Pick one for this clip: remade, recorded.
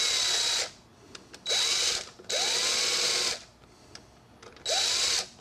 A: recorded